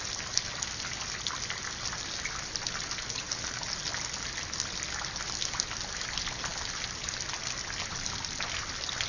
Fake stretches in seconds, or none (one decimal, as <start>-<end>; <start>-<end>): none